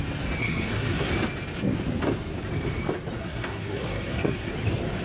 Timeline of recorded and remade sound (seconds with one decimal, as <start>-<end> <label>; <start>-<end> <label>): 0.0-0.4 recorded; 0.4-1.1 remade; 1.1-3.2 recorded; 3.2-4.5 remade; 4.5-5.0 recorded